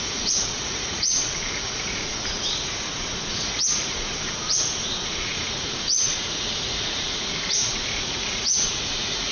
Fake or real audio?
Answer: fake